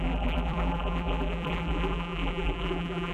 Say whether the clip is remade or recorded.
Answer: remade